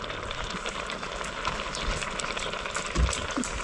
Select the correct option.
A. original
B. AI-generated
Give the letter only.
A